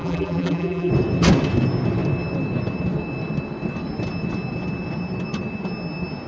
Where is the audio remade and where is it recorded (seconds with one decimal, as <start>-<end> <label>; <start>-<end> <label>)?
0.0-0.9 remade; 0.9-6.3 recorded